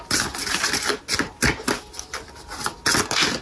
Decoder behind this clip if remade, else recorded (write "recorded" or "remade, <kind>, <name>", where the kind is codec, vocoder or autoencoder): recorded